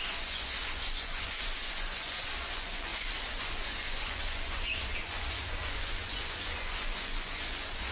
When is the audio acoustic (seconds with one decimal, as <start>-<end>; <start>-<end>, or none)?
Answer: none